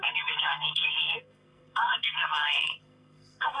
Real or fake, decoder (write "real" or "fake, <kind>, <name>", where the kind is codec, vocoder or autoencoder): fake, codec, SNAC